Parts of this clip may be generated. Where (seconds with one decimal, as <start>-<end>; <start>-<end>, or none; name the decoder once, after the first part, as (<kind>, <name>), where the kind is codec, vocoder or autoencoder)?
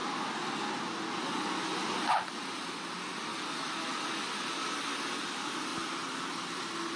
none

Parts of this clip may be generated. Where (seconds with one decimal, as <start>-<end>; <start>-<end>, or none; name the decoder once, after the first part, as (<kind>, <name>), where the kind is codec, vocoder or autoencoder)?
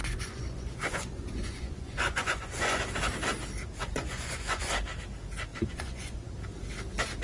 0.0-2.8 (vocoder, Vocos); 3.8-4.7; 5.5-6.3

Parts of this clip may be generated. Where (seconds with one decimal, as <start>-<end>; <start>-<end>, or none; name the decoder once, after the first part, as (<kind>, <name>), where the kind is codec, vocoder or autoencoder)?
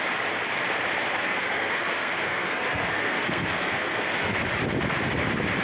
1.2-4.4 (codec, SNAC)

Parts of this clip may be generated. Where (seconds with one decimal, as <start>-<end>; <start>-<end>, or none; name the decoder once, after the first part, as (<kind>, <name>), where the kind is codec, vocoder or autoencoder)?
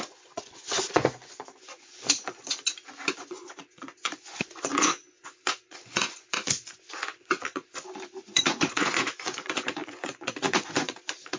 0.0-11.4 (vocoder, Vocos)